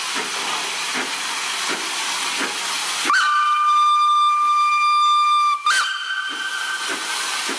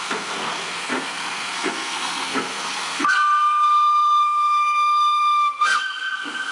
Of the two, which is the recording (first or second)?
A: first